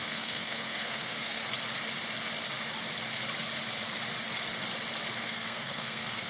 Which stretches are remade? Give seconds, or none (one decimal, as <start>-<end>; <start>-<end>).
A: 0.0-1.4; 5.2-6.3